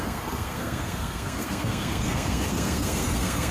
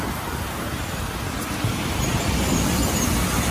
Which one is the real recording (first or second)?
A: second